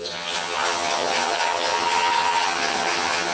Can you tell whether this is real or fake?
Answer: fake